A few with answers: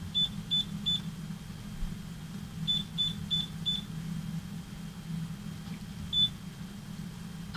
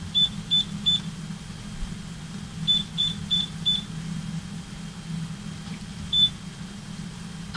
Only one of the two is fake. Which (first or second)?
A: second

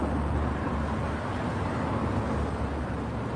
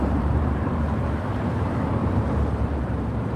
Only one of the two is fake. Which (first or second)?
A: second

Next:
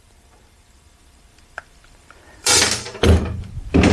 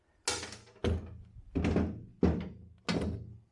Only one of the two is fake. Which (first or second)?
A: first